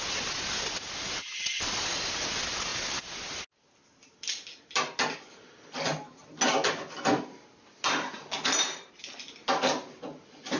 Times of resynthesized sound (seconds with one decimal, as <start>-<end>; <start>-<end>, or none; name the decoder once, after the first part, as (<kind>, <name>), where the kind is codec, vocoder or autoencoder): none

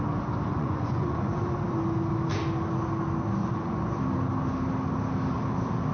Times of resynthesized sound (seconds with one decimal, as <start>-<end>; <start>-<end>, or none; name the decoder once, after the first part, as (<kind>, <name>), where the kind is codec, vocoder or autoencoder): 0.5-1.4 (vocoder, Vocos); 3.4-4.0

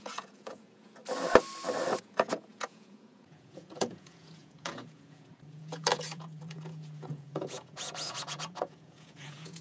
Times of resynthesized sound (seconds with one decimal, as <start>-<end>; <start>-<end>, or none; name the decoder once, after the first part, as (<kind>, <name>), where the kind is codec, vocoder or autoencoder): 0.0-1.0 (vocoder, Vocos); 2.0-9.6

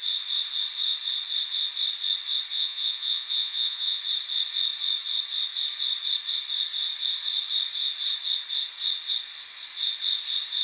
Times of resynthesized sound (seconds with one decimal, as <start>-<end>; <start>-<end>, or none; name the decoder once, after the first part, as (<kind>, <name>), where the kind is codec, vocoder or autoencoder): 2.5-4.0 (vocoder, Vocos)